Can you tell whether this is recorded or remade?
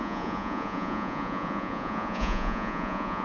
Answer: remade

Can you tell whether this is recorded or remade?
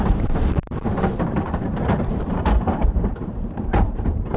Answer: remade